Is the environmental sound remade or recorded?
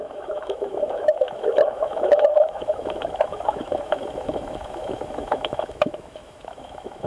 remade